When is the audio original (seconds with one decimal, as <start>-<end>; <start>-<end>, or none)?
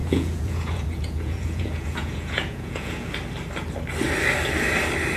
3.1-5.2